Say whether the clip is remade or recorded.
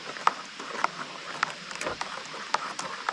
recorded